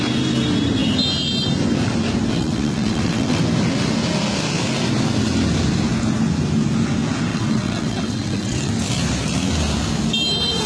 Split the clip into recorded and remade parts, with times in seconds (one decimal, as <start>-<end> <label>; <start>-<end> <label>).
0.0-2.3 recorded; 2.3-3.4 remade; 3.4-7.3 recorded; 7.3-8.7 remade; 8.7-10.7 recorded